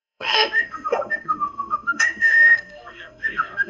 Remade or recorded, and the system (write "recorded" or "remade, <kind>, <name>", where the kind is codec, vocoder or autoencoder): remade, codec, SNAC